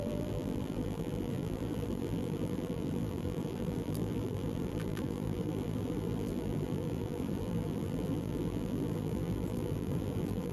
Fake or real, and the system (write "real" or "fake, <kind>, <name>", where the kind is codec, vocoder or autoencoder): fake, vocoder, BigVGAN v2